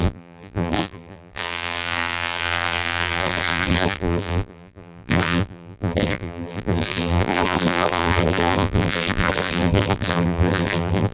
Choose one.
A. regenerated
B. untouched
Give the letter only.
A